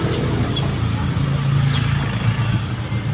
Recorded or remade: recorded